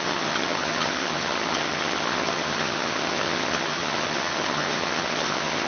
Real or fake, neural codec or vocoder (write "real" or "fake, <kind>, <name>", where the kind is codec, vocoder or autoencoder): fake, vocoder, HiFi-GAN